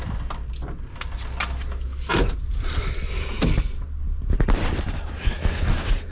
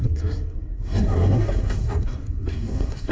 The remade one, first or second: second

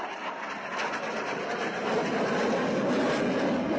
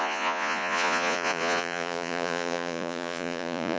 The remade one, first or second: second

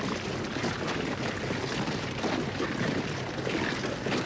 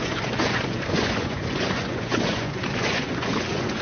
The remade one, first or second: second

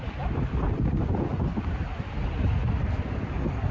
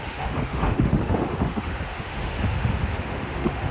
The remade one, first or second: second